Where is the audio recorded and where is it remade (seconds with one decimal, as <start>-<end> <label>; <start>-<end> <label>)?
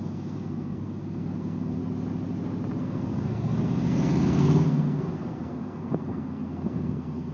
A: 0.0-1.8 remade; 1.8-2.8 recorded; 2.8-7.3 remade